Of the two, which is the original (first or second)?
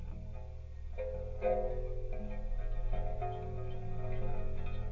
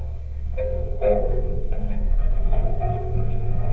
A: first